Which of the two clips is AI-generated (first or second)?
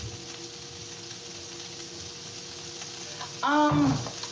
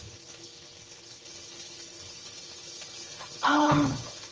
second